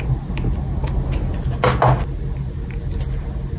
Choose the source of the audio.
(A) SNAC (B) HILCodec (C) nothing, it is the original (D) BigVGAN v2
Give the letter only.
C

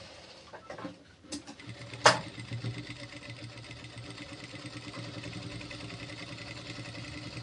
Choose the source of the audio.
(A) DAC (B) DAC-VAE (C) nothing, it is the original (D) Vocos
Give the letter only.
C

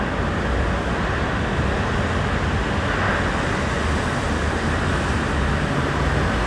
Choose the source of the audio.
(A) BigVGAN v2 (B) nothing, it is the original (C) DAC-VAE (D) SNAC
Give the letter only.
B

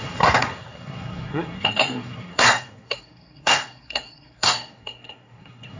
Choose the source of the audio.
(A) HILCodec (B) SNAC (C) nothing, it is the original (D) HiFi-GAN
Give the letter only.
B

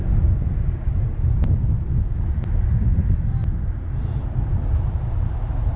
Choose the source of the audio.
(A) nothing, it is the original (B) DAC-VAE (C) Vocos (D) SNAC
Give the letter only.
A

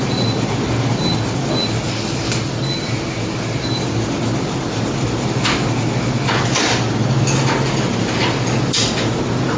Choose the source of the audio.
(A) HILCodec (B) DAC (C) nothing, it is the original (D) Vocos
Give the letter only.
C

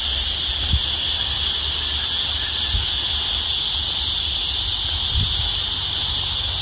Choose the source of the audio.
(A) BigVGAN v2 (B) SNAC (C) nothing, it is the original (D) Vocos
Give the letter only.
C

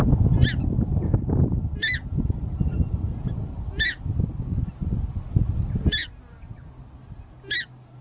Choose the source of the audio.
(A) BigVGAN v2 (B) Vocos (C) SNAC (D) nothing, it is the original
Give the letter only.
D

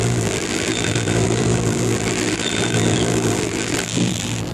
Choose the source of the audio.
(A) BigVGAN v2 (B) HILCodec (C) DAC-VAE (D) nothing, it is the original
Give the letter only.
A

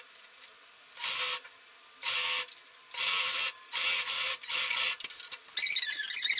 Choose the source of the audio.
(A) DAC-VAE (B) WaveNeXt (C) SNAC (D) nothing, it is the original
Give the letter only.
D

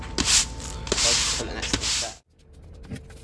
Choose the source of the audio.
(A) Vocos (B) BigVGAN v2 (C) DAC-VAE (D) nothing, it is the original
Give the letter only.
D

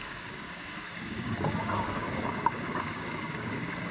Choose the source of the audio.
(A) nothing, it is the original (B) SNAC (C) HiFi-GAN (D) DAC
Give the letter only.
D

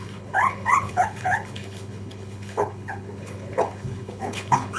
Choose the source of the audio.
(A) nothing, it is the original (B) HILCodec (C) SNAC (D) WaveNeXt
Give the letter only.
B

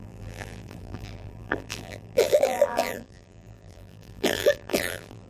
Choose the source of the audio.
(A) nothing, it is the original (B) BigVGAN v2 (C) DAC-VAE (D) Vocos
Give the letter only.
B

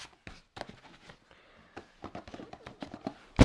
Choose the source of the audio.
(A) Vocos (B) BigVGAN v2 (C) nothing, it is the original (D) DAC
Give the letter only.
C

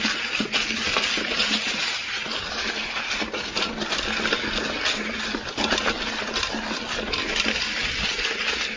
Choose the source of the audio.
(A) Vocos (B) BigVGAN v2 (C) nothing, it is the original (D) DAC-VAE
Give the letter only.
C